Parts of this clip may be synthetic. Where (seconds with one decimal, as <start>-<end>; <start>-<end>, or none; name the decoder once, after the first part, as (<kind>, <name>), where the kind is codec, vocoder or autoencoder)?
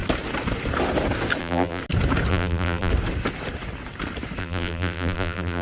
1.4-1.8 (vocoder, BigVGAN v2); 2.3-2.9; 4.4-5.6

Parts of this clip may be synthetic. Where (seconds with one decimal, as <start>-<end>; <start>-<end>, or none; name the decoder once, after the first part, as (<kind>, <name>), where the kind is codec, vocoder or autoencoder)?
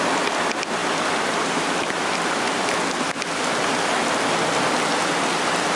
none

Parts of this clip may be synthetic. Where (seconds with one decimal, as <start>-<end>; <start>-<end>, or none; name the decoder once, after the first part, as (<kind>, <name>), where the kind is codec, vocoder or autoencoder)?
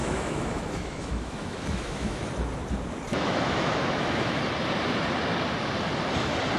0.0-2.2 (autoencoder, DAC-VAE); 3.1-4.4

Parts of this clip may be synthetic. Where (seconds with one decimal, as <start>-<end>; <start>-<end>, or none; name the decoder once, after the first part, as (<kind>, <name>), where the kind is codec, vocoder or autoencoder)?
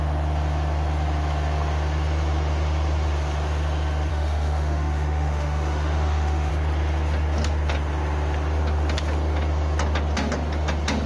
4.1-6.5 (autoencoder, DAC-VAE)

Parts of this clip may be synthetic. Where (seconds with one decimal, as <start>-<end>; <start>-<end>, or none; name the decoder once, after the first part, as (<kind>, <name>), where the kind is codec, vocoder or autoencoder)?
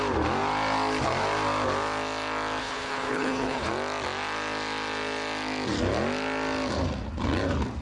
2.6-3.7 (codec, HILCodec)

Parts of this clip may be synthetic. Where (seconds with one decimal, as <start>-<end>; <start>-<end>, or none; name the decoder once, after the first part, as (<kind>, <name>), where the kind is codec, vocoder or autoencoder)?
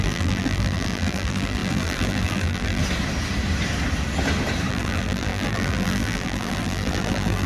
0.0-2.8 (vocoder, BigVGAN v2); 4.7-7.5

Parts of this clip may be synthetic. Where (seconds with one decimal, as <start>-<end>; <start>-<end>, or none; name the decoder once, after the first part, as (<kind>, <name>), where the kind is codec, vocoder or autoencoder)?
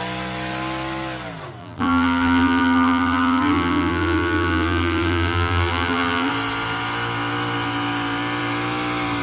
1.6-6.3 (vocoder, BigVGAN v2)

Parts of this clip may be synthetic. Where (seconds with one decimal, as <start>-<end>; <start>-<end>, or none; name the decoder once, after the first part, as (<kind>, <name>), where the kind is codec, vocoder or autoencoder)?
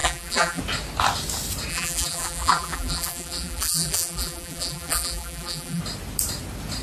0.0-0.6 (vocoder, BigVGAN v2); 1.7-5.8